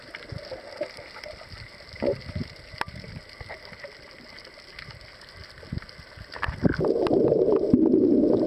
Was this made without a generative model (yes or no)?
yes